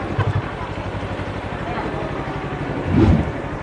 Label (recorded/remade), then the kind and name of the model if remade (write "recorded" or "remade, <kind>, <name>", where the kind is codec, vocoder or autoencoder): recorded